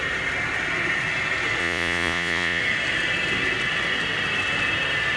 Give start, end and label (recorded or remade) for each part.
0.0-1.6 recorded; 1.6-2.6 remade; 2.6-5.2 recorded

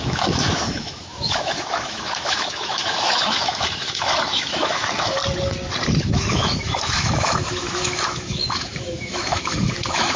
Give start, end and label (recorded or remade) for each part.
0.0-5.2 remade; 5.2-6.0 recorded; 6.0-10.2 remade